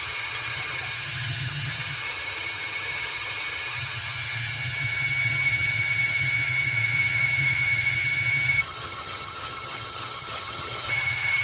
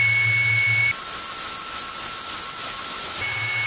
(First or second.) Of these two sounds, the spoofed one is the first